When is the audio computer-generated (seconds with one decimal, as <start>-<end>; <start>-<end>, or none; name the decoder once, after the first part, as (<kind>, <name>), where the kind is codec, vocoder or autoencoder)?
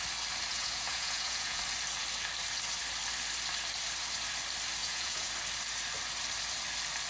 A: 0.5-1.6 (vocoder, Vocos); 4.8-5.3